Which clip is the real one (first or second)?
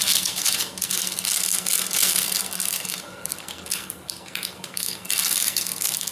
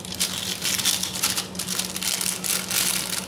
second